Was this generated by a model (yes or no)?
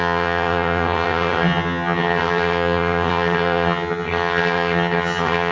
yes